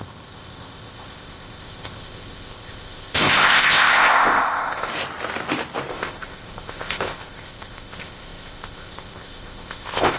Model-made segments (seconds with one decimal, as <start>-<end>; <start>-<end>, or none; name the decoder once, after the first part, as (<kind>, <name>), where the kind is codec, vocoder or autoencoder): 0.0-4.9 (codec, ZipCodec); 5.9-10.2